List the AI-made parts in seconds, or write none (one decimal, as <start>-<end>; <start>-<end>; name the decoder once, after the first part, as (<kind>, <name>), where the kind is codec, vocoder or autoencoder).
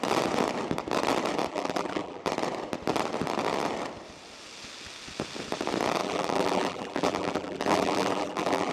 1.5-2.2 (vocoder, BigVGAN v2); 6.0-8.7